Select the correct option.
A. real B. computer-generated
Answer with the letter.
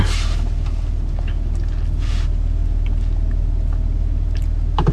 A